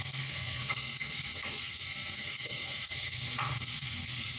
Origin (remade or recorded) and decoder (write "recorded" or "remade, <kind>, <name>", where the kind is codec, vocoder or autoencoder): remade, codec, SNAC